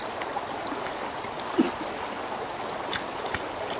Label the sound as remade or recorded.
recorded